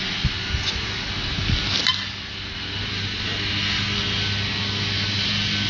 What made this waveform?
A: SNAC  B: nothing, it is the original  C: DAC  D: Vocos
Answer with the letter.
B